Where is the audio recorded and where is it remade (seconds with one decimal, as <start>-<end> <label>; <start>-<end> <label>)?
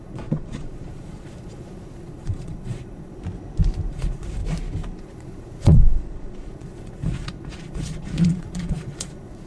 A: 0.0-3.2 remade; 3.2-3.9 recorded; 3.9-4.4 remade; 4.4-5.0 recorded; 5.0-9.5 remade